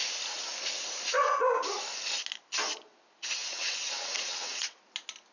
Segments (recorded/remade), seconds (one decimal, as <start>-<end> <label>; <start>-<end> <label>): 0.0-3.4 recorded; 3.4-4.8 remade; 4.8-5.3 recorded